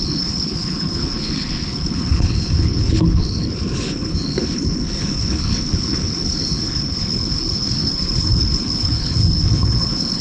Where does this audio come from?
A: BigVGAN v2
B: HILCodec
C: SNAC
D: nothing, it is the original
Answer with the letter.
B